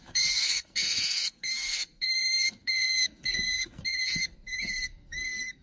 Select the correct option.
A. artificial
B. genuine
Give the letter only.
A